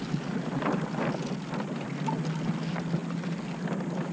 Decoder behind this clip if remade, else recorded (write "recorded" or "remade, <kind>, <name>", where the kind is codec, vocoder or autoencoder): recorded